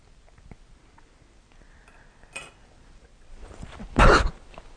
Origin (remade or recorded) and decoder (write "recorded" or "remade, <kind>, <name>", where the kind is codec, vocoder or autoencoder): recorded